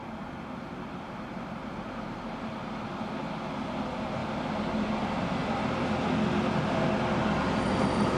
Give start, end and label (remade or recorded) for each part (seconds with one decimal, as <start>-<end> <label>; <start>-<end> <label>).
0.0-2.9 remade; 2.9-7.2 recorded; 7.2-8.2 remade